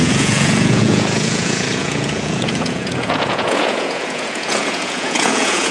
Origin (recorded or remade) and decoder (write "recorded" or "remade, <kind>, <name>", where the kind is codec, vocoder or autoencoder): remade, vocoder, Vocos